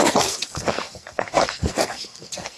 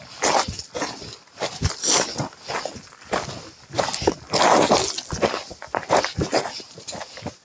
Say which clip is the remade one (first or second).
first